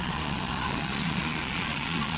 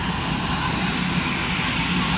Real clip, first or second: second